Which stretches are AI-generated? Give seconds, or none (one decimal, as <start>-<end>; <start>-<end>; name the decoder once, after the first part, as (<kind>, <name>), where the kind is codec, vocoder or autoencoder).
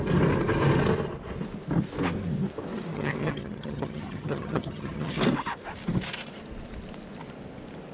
2.9-5.2 (vocoder, HiFi-GAN)